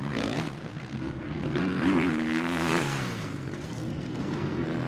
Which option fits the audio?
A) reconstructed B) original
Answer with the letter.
A